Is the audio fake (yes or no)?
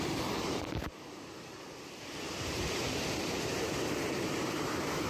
yes